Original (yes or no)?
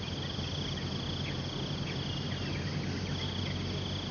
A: yes